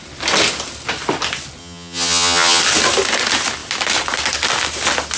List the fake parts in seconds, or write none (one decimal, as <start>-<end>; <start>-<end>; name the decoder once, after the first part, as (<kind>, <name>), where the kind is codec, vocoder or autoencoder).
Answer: 1.6-2.6 (vocoder, HiFi-GAN)